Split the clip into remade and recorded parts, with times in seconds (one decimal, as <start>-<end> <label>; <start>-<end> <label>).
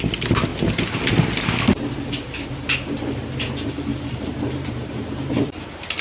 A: 0.0-3.9 recorded; 3.9-5.6 remade; 5.6-6.0 recorded